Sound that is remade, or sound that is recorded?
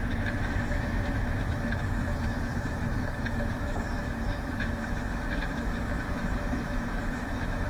remade